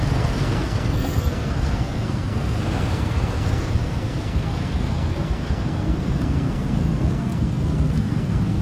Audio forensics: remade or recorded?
remade